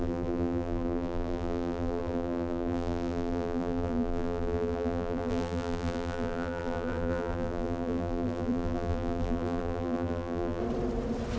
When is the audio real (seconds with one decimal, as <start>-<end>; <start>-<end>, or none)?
10.6-11.4